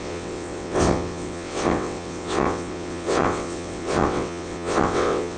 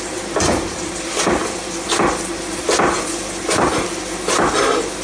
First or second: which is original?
second